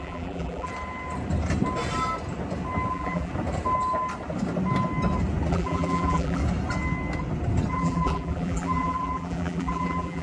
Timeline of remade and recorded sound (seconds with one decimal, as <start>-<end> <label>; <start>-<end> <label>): 0.0-0.7 remade; 0.7-2.9 recorded; 2.9-3.3 remade; 3.3-5.5 recorded; 5.5-6.4 remade; 6.4-7.7 recorded; 7.7-10.2 remade